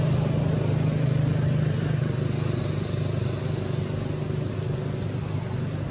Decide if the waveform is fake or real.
real